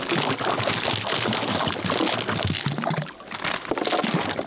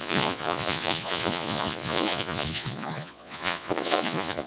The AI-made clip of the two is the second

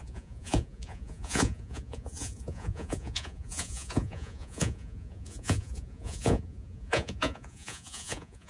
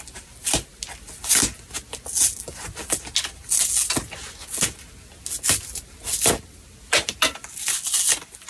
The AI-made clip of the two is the first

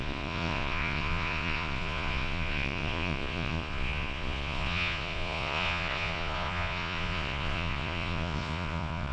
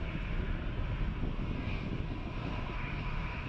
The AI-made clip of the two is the first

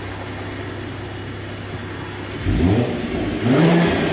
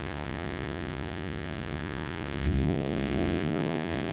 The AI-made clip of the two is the second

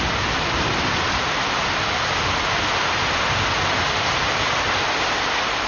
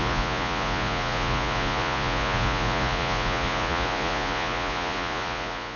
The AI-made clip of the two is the second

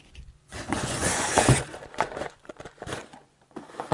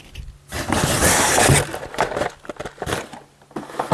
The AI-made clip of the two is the first